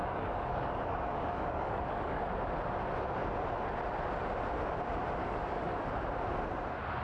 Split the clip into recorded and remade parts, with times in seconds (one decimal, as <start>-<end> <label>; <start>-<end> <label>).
0.0-2.2 remade; 2.2-5.2 recorded; 5.2-5.9 remade; 5.9-7.0 recorded